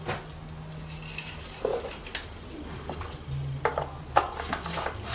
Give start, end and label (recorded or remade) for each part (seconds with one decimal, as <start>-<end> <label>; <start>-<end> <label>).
0.0-5.1 recorded